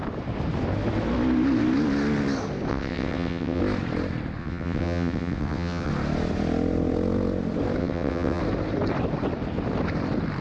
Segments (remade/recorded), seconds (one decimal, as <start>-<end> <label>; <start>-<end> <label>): 0.0-2.7 recorded; 2.7-3.6 remade; 3.6-4.4 recorded; 4.4-5.9 remade; 5.9-7.8 recorded; 7.8-8.4 remade; 8.4-10.4 recorded